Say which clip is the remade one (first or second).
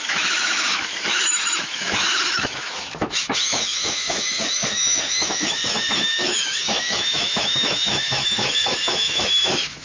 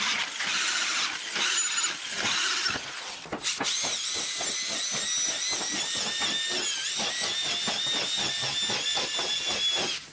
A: first